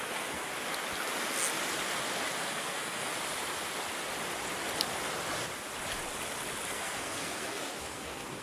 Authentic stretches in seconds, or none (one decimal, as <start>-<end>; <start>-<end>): 0.5-2.5; 3.1-6.7